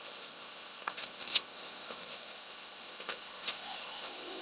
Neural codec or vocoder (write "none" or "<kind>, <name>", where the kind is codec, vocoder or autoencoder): codec, ZipCodec